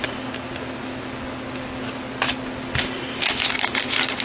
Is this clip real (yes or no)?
yes